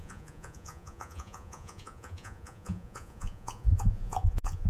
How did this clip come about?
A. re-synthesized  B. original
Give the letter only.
A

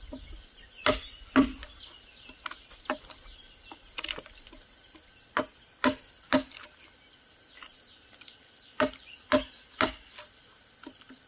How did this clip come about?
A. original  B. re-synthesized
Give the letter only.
B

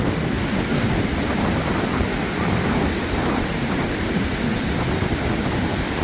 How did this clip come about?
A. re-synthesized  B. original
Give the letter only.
A